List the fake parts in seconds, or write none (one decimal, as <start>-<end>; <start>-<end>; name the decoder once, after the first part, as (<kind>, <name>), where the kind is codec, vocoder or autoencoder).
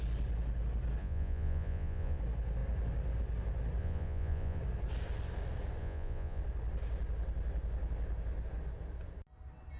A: 1.0-2.2 (vocoder, Vocos); 3.8-4.6; 5.8-6.4